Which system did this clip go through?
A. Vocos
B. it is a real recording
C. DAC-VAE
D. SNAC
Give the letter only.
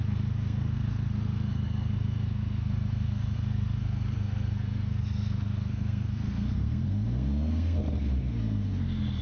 D